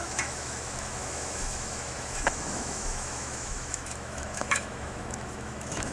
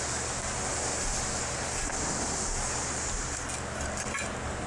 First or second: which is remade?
first